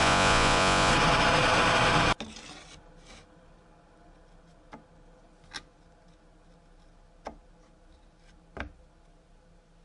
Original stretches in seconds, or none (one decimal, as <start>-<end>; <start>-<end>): 0.9-9.8